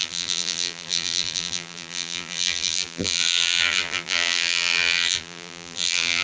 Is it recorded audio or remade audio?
remade